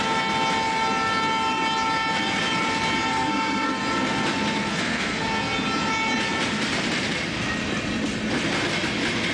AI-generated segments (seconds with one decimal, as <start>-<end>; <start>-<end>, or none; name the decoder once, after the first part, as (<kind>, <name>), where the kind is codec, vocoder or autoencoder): 3.1-3.7 (codec, SNAC); 4.7-5.2